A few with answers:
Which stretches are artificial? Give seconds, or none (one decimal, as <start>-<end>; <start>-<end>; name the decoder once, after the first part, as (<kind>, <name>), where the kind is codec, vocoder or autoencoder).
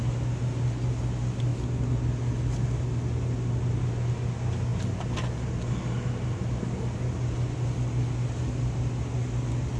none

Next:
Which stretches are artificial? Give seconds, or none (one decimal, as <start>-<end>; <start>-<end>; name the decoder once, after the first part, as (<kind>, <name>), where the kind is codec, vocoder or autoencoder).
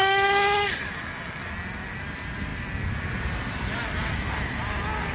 0.0-1.5 (codec, DAC)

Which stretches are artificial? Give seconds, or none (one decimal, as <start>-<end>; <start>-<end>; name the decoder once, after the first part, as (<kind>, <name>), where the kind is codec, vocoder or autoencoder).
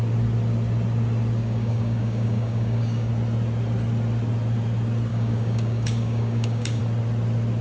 1.4-3.1 (codec, DAC); 5.1-6.8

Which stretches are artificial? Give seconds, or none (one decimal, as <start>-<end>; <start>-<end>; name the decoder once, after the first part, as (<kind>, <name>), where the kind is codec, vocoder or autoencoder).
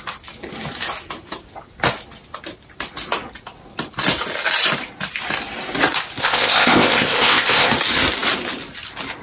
6.2-7.7 (codec, ZipCodec)